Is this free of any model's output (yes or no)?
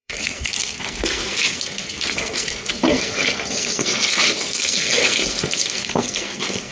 no